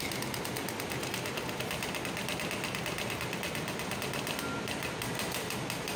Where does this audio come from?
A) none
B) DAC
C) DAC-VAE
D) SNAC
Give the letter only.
A